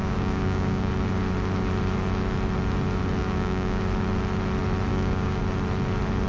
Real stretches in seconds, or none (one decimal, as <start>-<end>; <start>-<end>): 0.9-3.2; 3.8-4.9; 5.4-6.3